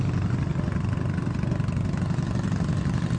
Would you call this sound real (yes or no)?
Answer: yes